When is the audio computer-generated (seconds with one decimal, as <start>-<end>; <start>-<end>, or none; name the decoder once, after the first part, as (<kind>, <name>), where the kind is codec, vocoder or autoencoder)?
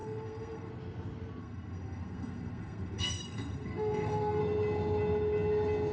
0.0-0.7 (codec, SNAC); 1.4-4.4